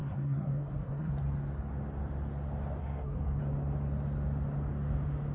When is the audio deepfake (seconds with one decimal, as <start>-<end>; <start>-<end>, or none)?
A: 0.0-1.1; 2.8-3.4